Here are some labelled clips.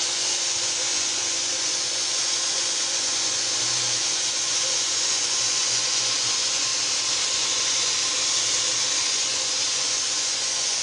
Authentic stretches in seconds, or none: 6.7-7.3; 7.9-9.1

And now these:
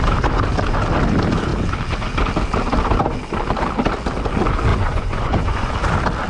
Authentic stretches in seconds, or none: 0.0-4.7; 5.7-6.3

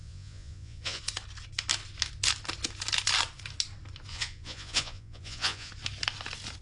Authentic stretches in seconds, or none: 1.0-4.1; 5.7-6.6

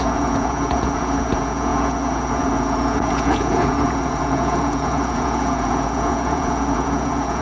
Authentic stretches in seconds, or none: none

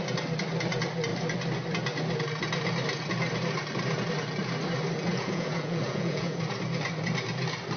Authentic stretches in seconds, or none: 0.0-5.1; 6.4-7.8

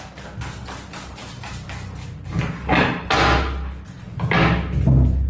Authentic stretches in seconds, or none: 0.0-5.3